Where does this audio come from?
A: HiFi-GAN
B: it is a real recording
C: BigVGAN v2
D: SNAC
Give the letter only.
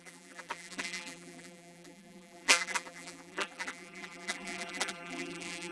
C